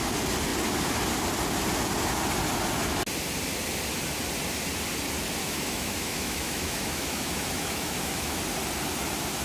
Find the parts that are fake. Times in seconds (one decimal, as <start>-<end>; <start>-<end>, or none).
5.4-8.4